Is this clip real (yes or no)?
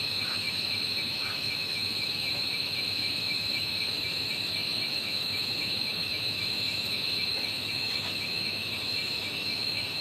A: no